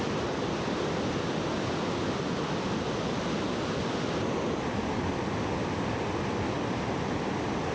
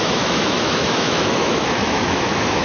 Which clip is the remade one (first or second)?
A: second